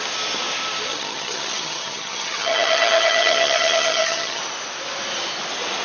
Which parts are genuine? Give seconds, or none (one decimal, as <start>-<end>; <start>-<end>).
0.0-0.9; 4.4-5.8